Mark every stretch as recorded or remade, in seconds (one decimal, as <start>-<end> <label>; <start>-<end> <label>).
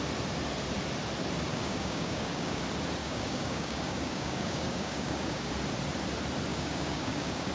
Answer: 0.0-1.5 recorded; 1.5-2.6 remade; 2.6-3.0 recorded; 3.0-5.5 remade; 5.5-6.5 recorded; 6.5-7.5 remade